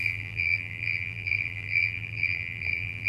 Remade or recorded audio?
remade